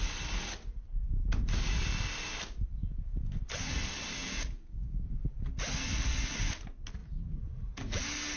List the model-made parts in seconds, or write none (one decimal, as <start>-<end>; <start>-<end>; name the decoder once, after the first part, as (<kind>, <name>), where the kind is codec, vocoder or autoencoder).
4.2-5.5 (vocoder, BigVGAN v2); 7.0-8.0